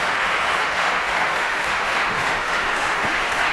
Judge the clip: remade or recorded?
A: remade